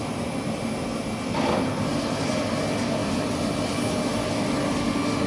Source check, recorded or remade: recorded